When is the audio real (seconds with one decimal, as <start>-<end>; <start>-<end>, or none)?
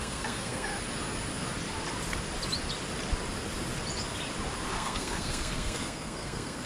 0.7-4.7